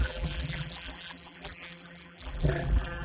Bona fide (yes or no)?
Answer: no